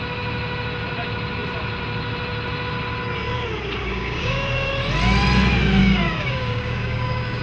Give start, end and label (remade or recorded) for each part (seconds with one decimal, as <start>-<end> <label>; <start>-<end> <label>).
0.0-3.8 recorded; 3.8-4.7 remade; 4.7-5.8 recorded; 5.8-7.4 remade